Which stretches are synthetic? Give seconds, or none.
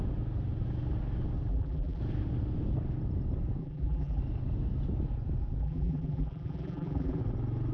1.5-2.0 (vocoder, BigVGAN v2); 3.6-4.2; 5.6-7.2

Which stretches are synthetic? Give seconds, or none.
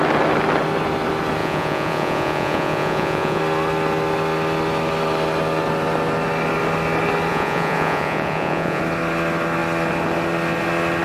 1.4-3.4 (vocoder, Vocos); 7.3-8.8